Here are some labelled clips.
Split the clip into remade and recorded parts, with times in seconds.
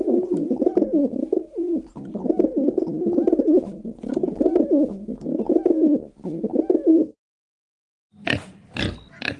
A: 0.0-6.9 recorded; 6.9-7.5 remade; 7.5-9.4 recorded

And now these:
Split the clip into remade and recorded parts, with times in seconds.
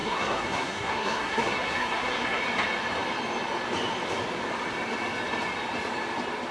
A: 0.0-2.4 remade; 2.4-6.5 recorded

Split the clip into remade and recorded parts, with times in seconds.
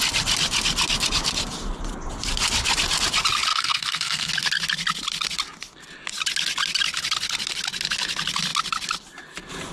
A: 0.0-3.5 recorded; 3.5-4.3 remade; 4.3-9.7 recorded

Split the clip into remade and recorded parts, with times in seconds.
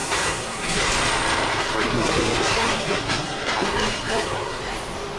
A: 0.0-0.9 remade; 0.9-1.5 recorded; 1.5-4.6 remade; 4.6-5.2 recorded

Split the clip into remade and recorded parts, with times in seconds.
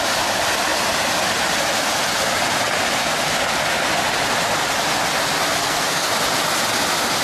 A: 0.0-5.6 recorded; 5.6-6.1 remade; 6.1-7.2 recorded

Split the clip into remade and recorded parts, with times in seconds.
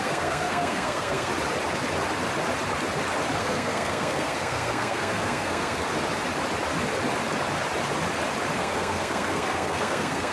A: 0.0-1.3 remade; 1.3-3.4 recorded; 3.4-5.9 remade; 5.9-8.6 recorded; 8.6-10.3 remade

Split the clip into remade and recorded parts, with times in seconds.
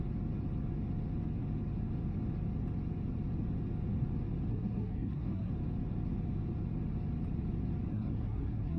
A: 0.0-4.5 recorded; 4.5-5.5 remade; 5.5-7.9 recorded; 7.9-8.8 remade